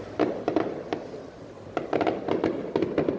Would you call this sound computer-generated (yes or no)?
no